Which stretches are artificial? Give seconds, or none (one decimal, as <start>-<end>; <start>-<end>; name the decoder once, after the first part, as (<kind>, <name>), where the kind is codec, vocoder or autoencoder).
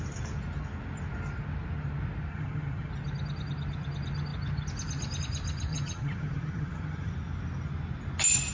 2.3-2.9 (vocoder, HiFi-GAN); 5.7-7.1